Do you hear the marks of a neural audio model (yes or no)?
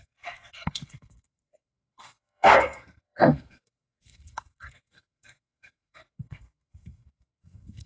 yes